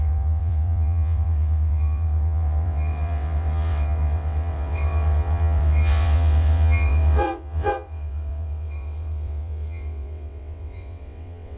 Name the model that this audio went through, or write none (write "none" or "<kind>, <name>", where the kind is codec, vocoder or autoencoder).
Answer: vocoder, WaveNeXt